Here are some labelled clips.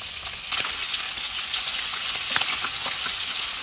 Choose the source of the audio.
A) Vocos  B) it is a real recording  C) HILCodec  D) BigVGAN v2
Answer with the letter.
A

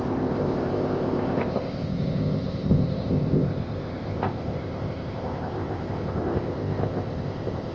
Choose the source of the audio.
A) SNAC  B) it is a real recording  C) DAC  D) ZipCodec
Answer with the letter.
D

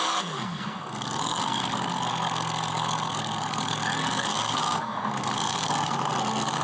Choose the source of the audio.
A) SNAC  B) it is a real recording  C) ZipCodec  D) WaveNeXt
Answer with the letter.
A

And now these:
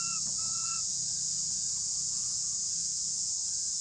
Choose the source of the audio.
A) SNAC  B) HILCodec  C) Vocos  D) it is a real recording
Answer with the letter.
C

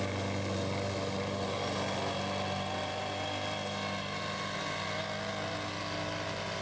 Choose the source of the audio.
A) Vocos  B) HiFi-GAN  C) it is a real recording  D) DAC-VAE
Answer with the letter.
C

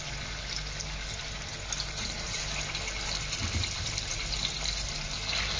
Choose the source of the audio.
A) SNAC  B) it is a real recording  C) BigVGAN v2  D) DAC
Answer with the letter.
B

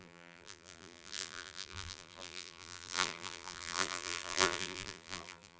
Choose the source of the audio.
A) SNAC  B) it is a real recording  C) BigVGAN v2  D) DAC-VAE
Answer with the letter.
C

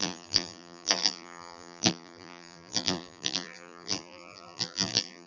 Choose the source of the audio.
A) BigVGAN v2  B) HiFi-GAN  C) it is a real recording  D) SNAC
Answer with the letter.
A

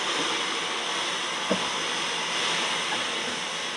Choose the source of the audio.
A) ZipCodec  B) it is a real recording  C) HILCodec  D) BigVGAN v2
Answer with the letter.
B